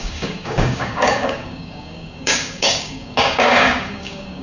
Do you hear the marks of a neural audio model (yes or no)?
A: yes